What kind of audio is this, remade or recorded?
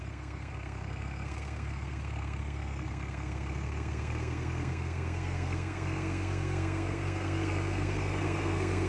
remade